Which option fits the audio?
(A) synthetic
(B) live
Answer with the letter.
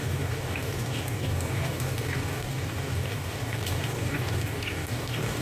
A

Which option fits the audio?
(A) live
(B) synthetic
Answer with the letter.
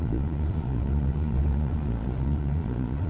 B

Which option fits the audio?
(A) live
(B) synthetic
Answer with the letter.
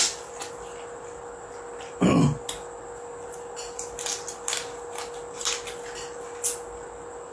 A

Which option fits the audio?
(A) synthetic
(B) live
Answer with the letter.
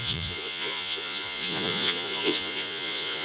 A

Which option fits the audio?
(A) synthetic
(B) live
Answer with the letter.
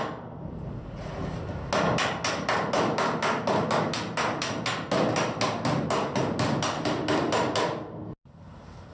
B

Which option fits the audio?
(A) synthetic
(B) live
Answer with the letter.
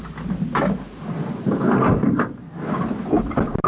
B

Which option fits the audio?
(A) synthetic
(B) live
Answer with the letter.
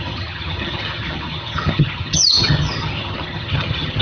A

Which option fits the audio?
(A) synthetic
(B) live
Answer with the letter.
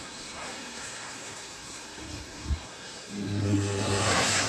A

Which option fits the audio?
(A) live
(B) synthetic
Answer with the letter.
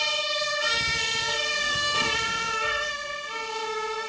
B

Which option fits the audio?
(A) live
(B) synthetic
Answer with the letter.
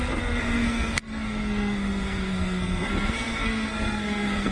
B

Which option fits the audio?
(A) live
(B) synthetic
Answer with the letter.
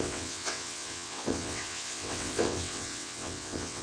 B